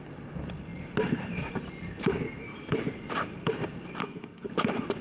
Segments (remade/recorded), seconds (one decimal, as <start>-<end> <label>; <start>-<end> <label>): 0.0-4.0 recorded; 4.0-4.5 remade; 4.5-5.0 recorded